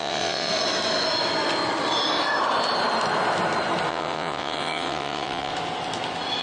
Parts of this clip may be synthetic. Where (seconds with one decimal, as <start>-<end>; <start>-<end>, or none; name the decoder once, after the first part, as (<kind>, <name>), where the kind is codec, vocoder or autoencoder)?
0.0-0.5 (vocoder, WaveNeXt); 3.9-5.5